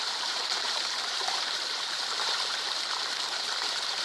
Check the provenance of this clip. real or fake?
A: fake